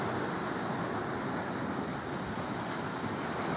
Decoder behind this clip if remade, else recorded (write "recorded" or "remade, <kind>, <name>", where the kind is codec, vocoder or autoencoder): recorded